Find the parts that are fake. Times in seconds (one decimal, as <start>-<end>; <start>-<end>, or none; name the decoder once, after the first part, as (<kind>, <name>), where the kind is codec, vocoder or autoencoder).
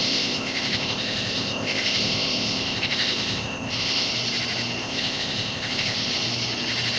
0.0-4.1 (codec, ZipCodec); 4.8-6.1